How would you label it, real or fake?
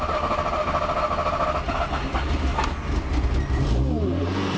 real